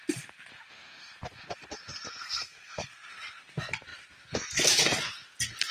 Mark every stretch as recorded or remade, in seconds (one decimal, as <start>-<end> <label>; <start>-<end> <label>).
0.0-2.1 recorded; 2.1-3.1 remade; 3.1-5.7 recorded